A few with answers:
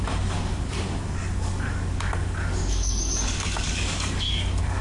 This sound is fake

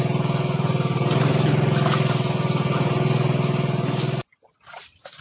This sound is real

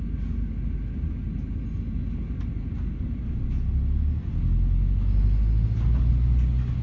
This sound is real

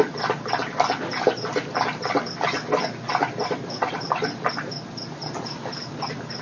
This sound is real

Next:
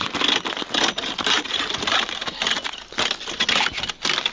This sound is real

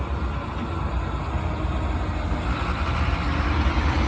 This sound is real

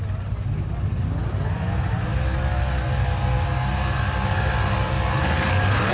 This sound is real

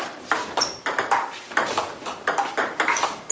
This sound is real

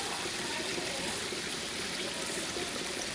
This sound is real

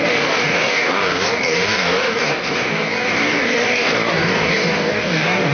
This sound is fake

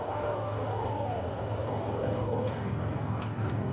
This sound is fake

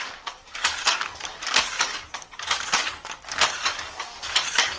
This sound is fake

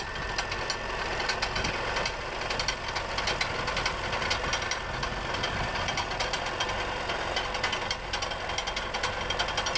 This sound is real